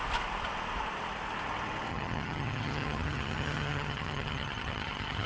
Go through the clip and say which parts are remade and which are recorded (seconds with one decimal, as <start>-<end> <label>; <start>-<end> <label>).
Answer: 0.0-1.9 recorded; 1.9-5.3 remade